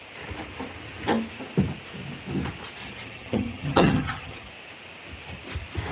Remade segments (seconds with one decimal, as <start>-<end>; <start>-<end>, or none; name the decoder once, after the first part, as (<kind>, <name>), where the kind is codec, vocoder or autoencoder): 2.8-4.5 (vocoder, HiFi-GAN)